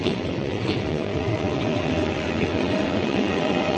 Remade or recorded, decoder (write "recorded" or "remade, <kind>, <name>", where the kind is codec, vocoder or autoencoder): remade, vocoder, WaveNeXt